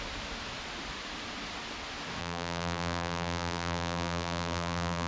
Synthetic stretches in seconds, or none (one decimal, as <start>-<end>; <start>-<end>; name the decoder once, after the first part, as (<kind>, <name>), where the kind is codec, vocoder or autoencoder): 2.2-5.1 (vocoder, BigVGAN v2)